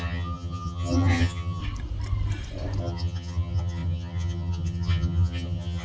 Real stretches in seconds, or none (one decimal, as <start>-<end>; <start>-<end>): 1.6-2.8